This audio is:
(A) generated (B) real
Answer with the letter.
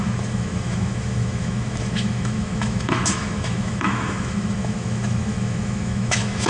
A